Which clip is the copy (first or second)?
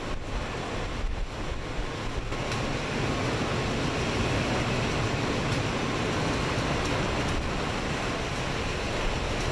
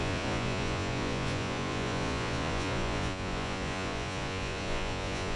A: second